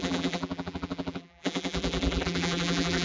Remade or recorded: remade